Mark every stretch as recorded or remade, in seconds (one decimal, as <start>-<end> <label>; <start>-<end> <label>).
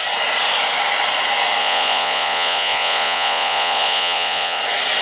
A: 0.0-1.6 recorded; 1.6-4.6 remade; 4.6-5.0 recorded